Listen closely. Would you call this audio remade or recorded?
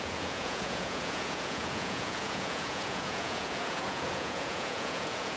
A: remade